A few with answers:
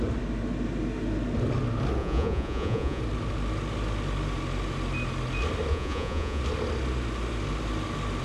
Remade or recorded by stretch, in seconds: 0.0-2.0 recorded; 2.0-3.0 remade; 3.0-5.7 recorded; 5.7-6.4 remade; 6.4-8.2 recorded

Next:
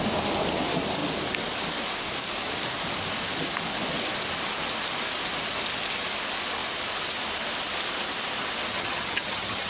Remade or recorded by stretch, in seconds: 0.0-8.7 recorded; 8.7-9.7 remade

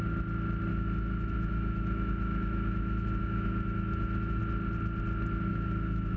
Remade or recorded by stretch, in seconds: 0.0-0.7 recorded; 0.7-4.4 remade; 4.4-5.5 recorded; 5.5-6.2 remade

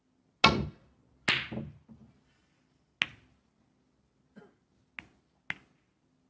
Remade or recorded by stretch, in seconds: 0.0-6.3 recorded

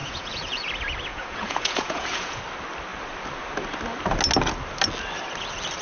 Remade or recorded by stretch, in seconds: 0.0-0.7 remade; 0.7-1.1 recorded; 1.1-2.4 remade; 2.4-5.8 recorded